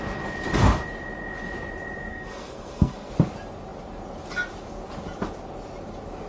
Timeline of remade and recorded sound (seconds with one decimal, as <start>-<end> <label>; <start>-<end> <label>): 0.0-2.1 recorded; 2.1-3.1 remade; 3.1-6.3 recorded